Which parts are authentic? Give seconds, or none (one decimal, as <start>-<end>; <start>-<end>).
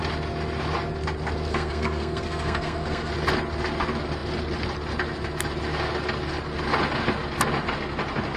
0.0-1.5; 3.1-8.4